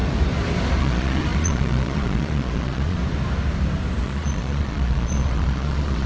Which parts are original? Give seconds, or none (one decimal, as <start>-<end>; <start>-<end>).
0.0-0.8; 3.0-4.0